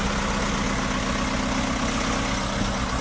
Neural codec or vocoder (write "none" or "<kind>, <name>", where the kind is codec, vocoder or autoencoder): none